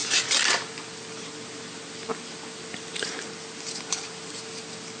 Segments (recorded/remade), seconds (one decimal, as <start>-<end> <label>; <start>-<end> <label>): 0.0-5.0 recorded